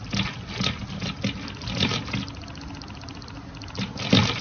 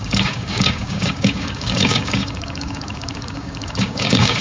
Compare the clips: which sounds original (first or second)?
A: first